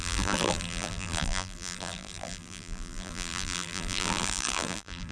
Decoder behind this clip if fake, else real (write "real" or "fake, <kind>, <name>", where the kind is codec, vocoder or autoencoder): fake, vocoder, BigVGAN v2